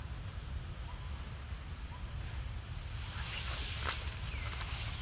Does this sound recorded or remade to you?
recorded